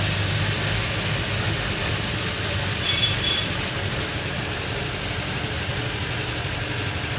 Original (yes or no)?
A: yes